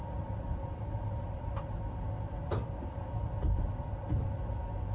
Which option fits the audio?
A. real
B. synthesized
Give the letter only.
A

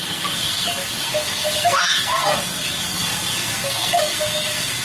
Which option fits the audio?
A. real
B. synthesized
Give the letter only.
B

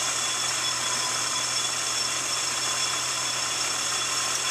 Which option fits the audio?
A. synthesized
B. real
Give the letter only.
B